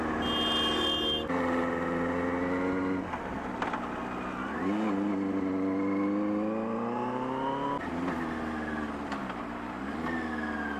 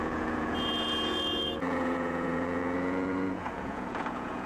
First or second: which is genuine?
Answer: first